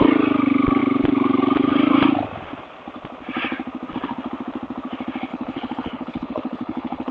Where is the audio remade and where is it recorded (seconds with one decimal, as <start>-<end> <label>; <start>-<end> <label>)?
0.0-5.3 recorded; 5.3-7.1 remade